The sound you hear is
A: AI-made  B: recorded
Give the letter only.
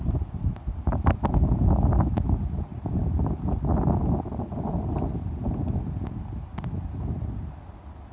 B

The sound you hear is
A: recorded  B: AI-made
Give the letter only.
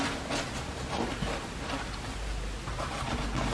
A